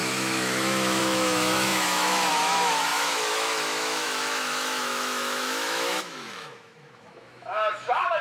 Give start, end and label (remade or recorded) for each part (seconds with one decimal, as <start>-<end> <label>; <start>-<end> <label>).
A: 0.0-8.2 remade